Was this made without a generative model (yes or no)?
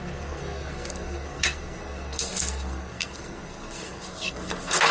no